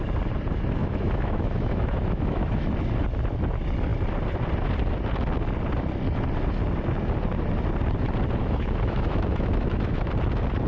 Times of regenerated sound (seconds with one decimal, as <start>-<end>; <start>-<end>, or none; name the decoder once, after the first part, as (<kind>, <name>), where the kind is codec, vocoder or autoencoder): 0.8-2.7 (autoencoder, DAC-VAE); 8.4-10.1